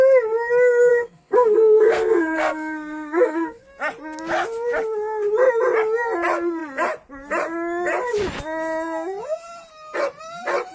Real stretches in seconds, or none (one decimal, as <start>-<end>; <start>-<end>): 0.0-0.9; 3.7-10.7